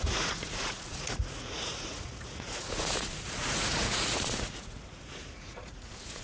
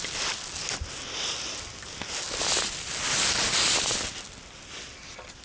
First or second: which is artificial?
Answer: first